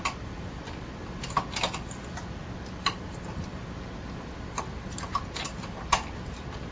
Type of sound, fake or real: real